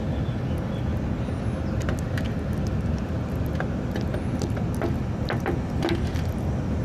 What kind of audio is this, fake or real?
real